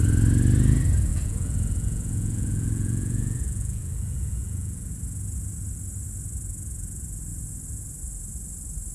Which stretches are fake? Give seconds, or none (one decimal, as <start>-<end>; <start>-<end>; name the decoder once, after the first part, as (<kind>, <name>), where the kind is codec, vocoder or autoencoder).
1.1-4.9 (vocoder, Vocos)